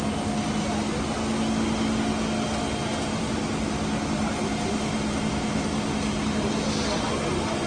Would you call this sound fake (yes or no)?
no